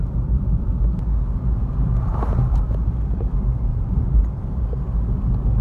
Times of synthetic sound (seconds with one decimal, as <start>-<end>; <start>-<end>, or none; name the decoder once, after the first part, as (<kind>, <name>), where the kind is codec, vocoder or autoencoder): 0.0-3.2 (vocoder, BigVGAN v2); 3.7-4.8